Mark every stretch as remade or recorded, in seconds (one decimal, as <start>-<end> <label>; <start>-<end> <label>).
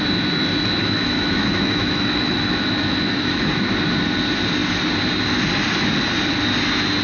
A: 0.0-0.8 recorded; 0.8-3.6 remade; 3.6-7.0 recorded